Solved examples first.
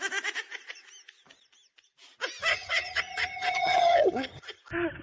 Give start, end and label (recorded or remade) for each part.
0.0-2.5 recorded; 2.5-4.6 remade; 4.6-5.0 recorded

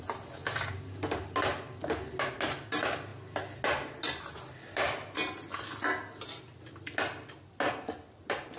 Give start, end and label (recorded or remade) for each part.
0.0-8.6 recorded

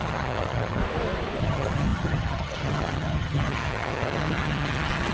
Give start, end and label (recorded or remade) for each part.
0.0-0.8 remade; 0.8-1.4 recorded; 1.4-5.1 remade

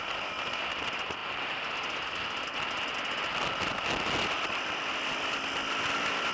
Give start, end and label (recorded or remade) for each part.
0.0-6.3 recorded

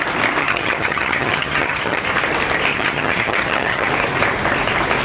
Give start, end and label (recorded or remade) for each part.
0.0-0.4 recorded; 0.4-2.0 remade; 2.0-2.7 recorded; 2.7-3.9 remade; 3.9-5.0 recorded

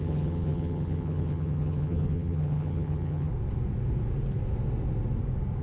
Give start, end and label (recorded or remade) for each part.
0.0-3.3 remade; 3.3-5.6 recorded

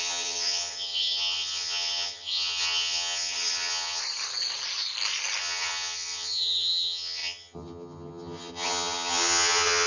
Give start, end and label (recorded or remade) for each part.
0.0-4.0 remade; 4.0-5.4 recorded; 5.4-9.9 remade

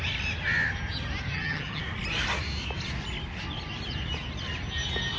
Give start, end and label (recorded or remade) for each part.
0.0-1.3 recorded; 1.3-1.8 remade; 1.8-5.2 recorded